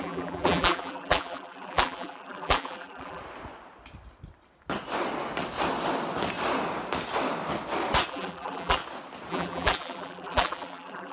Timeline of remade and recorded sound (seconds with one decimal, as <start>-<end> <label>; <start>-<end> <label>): 0.0-3.2 remade; 3.2-8.1 recorded; 8.1-8.8 remade; 8.8-9.3 recorded; 9.3-11.1 remade